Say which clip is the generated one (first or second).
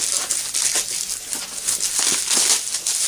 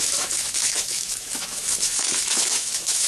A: second